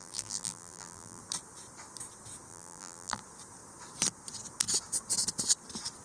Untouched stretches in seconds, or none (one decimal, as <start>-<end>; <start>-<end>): 1.2-2.5; 3.2-6.0